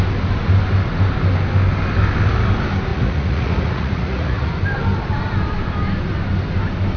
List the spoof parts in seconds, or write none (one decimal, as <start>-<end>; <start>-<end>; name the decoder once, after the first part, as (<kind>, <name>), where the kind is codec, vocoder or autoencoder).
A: 2.9-4.5 (vocoder, Vocos)